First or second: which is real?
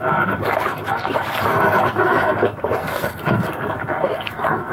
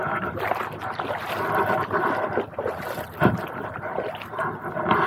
second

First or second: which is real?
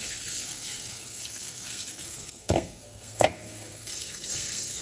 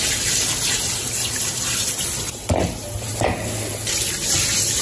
second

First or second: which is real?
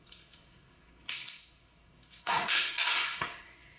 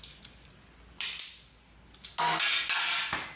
second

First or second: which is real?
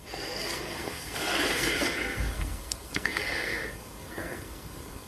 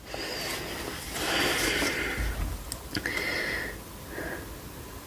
second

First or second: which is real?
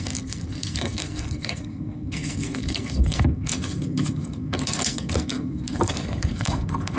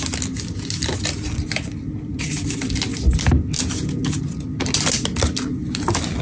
second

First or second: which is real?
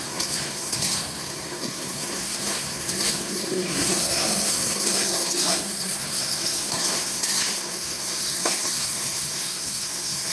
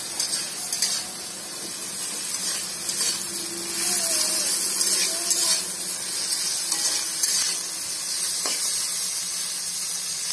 second